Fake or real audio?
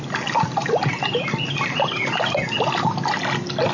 real